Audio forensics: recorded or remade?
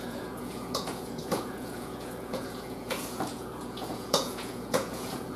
remade